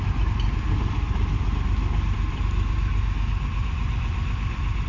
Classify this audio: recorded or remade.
remade